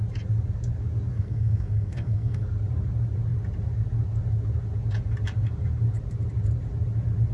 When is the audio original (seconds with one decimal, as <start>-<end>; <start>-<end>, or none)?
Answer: 0.0-1.1; 2.4-7.3